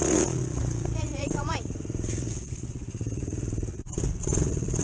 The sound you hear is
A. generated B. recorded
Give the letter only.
A